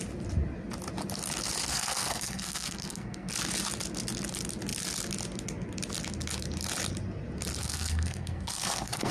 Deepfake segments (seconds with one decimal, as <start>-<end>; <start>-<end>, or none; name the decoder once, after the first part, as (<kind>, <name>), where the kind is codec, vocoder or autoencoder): 1.7-3.3 (codec, SNAC); 7.6-9.1